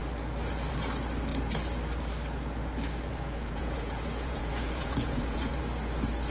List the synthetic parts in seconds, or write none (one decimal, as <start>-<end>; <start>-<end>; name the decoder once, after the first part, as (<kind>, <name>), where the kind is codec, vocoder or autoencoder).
3.1-5.6 (vocoder, Vocos)